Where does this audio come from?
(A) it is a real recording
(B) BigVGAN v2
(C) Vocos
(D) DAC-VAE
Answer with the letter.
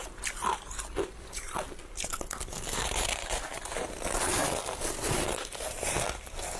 B